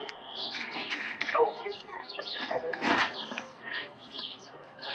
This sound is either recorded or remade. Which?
remade